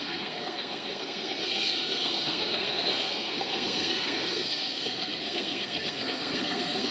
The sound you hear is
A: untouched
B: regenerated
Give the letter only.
B